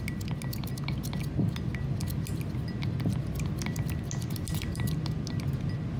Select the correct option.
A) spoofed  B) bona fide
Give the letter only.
B